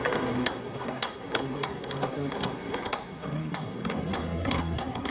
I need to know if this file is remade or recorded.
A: remade